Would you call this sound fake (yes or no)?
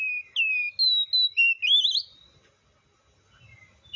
no